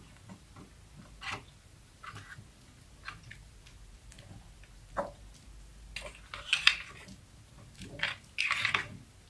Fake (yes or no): no